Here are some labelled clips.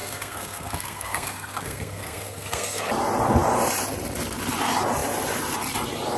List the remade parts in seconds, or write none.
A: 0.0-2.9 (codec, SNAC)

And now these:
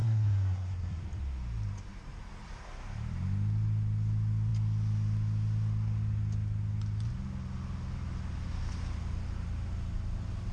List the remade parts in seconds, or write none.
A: 0.0-1.0 (codec, SNAC)

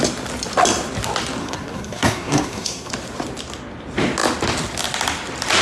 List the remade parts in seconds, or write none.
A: 1.4-2.9 (codec, SNAC)

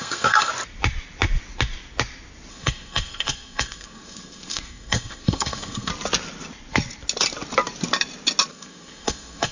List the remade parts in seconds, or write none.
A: 0.0-0.5 (codec, SNAC); 2.5-5.9; 8.5-9.5

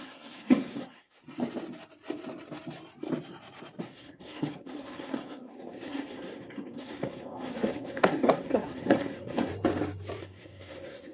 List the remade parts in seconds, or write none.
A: 0.0-1.2 (codec, SNAC); 3.8-9.5; 10.2-11.1

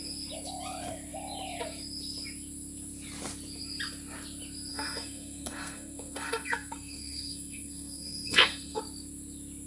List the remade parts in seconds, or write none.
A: 4.7-8.8 (codec, SNAC)

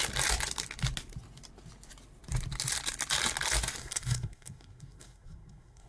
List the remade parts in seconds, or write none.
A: 3.8-5.9 (codec, SNAC)